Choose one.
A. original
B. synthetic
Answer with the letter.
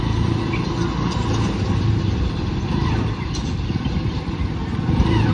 A